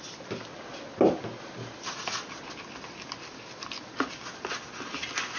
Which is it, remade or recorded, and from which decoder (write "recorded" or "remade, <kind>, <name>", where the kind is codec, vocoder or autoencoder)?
recorded